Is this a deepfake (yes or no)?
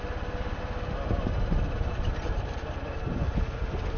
no